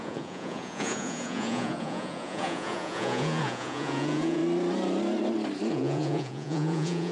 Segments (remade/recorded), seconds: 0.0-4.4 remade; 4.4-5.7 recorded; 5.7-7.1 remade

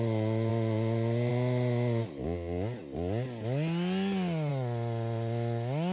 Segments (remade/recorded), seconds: 0.0-5.9 recorded

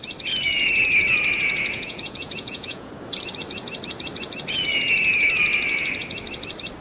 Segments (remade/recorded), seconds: 0.0-1.7 recorded; 1.7-2.9 remade; 2.9-6.8 recorded

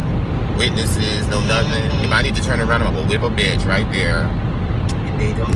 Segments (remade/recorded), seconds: 0.0-5.6 recorded

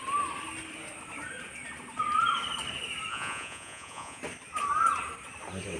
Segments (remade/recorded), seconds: 0.0-3.1 recorded; 3.1-4.2 remade; 4.2-5.8 recorded

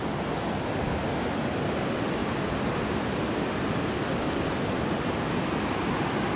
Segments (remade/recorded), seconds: 0.0-6.4 recorded

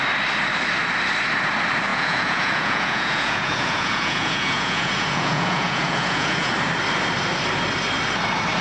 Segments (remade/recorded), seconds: 0.0-1.9 recorded; 1.9-6.5 remade; 6.5-8.6 recorded